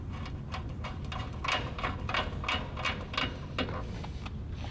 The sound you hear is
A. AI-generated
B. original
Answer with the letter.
B